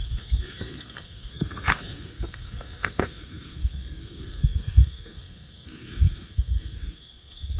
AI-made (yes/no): yes